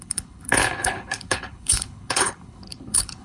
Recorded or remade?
remade